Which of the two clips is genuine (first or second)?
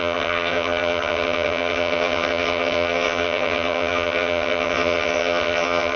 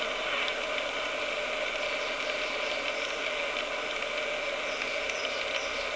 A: second